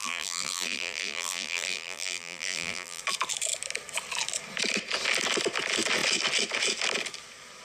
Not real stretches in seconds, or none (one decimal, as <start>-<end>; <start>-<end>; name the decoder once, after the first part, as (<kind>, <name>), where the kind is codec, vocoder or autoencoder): 0.0-3.0 (vocoder, BigVGAN v2)